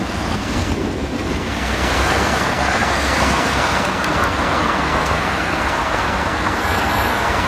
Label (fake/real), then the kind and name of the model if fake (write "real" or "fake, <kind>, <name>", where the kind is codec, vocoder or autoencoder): fake, codec, SNAC